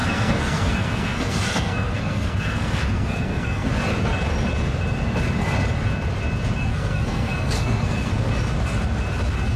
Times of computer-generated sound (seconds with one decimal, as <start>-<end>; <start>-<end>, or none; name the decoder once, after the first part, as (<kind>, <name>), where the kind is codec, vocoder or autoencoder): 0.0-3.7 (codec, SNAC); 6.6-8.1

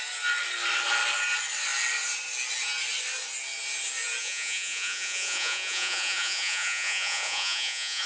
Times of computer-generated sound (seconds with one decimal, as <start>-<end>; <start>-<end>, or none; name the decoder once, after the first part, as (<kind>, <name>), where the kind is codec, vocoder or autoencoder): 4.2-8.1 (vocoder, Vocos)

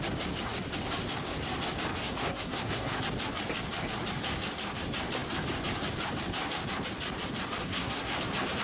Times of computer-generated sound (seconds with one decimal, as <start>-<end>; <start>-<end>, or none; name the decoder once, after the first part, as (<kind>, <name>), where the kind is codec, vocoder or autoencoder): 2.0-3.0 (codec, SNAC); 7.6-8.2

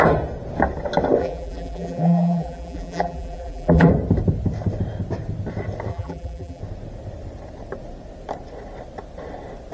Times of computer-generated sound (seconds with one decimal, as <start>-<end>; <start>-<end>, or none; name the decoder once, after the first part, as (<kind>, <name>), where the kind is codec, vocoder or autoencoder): 1.2-3.9 (vocoder, BigVGAN v2); 5.9-6.6

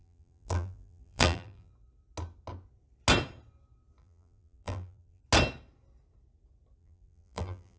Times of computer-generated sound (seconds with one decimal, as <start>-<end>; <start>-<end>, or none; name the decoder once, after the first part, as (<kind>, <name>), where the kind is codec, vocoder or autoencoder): 0.0-1.7 (vocoder, BigVGAN v2); 4.0-5.2; 6.8-7.8